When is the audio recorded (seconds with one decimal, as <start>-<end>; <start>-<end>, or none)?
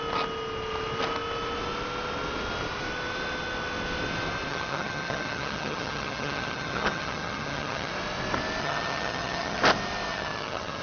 0.0-4.5; 7.9-8.6; 9.6-10.1